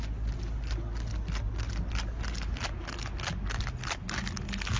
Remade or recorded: recorded